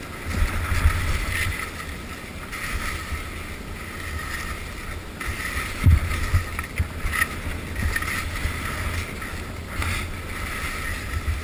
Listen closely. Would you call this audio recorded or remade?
recorded